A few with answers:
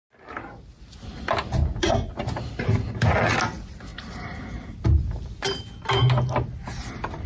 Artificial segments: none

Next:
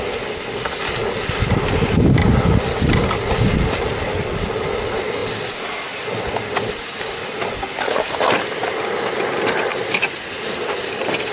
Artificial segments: none

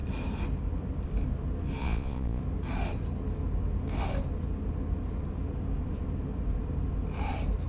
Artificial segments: 1.8-2.4 (vocoder, Vocos)

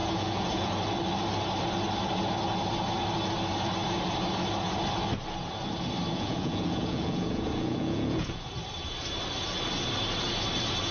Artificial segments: 0.0-0.7 (vocoder, Vocos); 6.1-8.5

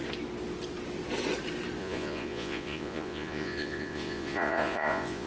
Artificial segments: 1.8-5.3 (vocoder, Vocos)